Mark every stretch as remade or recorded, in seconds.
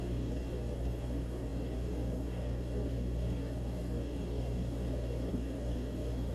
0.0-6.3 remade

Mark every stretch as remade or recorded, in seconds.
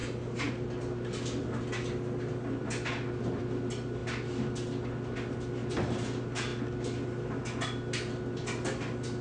0.0-9.2 recorded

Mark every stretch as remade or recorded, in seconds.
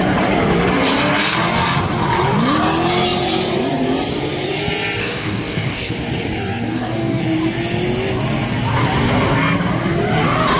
0.0-5.0 recorded; 5.0-5.9 remade; 5.9-6.7 recorded; 6.7-7.2 remade; 7.2-10.6 recorded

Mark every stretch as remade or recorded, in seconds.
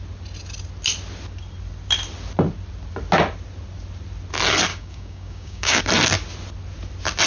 0.0-4.7 recorded; 4.7-5.8 remade; 5.8-7.3 recorded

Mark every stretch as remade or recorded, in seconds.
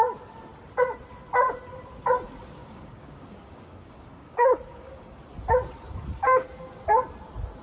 0.0-2.6 recorded; 2.6-5.2 remade; 5.2-7.6 recorded